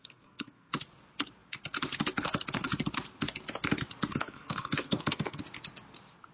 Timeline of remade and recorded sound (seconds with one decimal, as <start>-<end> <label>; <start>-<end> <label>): 0.0-0.7 remade; 0.7-4.1 recorded; 4.1-5.4 remade; 5.4-6.3 recorded